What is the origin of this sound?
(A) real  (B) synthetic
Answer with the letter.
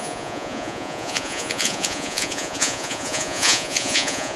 B